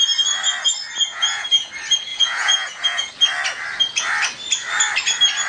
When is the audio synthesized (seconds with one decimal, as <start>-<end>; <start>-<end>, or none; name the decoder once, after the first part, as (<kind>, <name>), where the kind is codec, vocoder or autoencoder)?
1.1-1.7 (vocoder, Vocos); 2.1-3.1